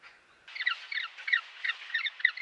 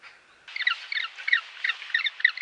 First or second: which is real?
second